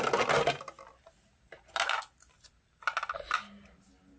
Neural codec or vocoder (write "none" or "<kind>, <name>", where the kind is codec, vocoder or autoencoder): none